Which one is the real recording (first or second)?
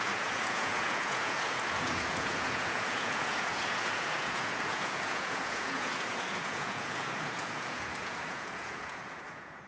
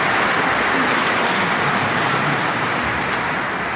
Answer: second